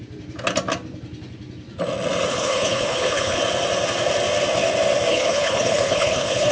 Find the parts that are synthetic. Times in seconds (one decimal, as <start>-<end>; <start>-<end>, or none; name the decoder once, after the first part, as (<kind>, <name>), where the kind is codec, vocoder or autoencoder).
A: 2.3-3.4 (codec, HILCodec); 5.1-6.5